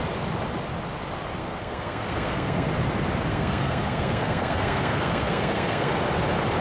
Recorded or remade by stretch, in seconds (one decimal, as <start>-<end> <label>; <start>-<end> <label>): 0.0-1.4 recorded; 1.4-2.7 remade; 2.7-3.3 recorded; 3.3-5.9 remade; 5.9-6.6 recorded